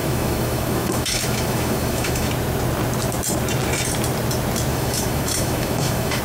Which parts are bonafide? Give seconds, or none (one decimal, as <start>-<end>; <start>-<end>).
2.3-4.7